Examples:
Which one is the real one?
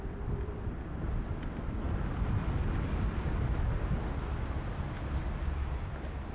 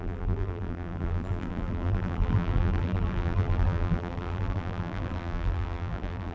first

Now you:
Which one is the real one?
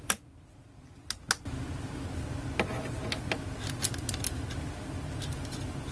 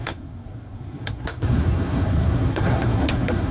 first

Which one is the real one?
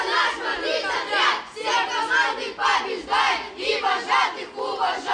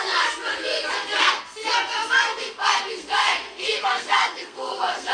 first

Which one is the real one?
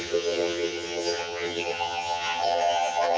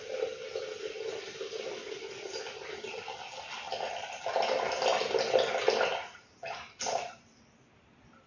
second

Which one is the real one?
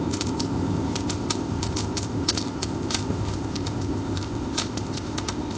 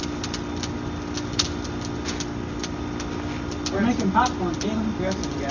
second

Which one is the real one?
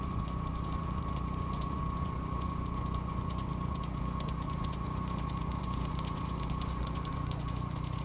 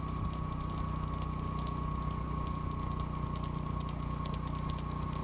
second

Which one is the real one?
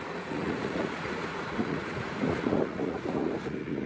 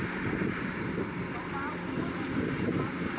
second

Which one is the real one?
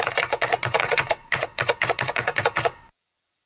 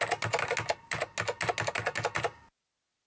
second